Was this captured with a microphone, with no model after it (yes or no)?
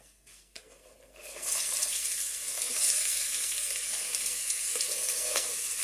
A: no